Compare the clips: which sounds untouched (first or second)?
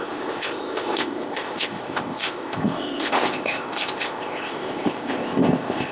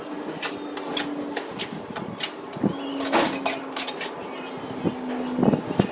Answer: second